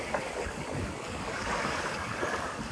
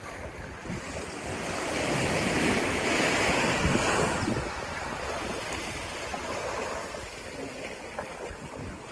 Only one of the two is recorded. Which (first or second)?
second